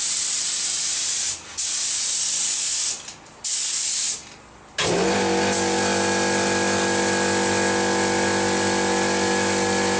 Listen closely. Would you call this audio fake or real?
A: real